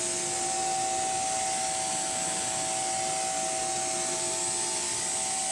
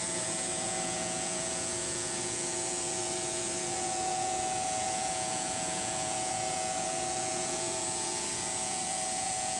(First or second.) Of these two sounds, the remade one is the second